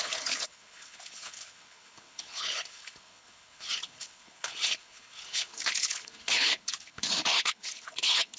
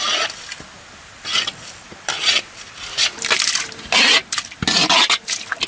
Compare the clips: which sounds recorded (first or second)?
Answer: second